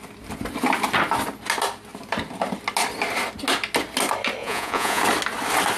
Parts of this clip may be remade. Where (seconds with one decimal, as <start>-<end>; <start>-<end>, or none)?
4.4-5.0